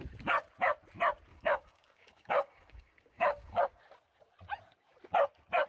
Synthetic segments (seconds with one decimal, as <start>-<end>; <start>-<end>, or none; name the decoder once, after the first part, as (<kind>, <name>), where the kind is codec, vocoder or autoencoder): 1.3-3.6 (codec, DAC)